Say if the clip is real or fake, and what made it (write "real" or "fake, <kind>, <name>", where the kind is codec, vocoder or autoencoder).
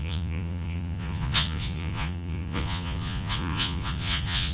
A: fake, vocoder, Vocos